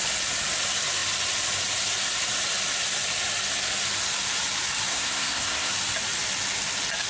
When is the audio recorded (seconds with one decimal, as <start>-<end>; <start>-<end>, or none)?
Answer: 0.0-4.9; 5.7-7.1